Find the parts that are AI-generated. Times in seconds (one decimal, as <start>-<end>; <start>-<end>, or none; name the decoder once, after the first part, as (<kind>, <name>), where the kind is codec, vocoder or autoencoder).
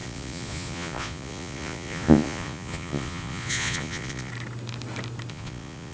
0.0-4.3 (vocoder, Vocos); 5.3-5.9